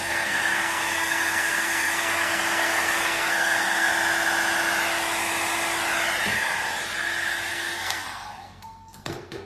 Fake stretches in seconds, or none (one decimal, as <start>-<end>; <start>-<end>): 0.0-3.9; 7.5-9.5